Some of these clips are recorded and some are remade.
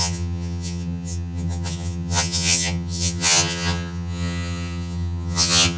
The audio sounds remade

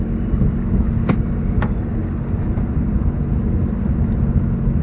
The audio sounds recorded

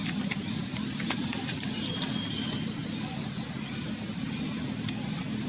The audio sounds recorded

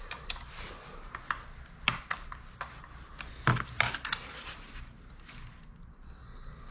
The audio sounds recorded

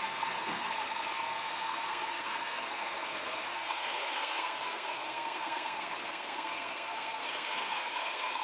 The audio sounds remade